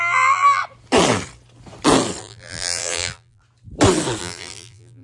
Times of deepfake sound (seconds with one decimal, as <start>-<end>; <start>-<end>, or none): 0.0-0.6; 2.2-3.4; 4.2-5.0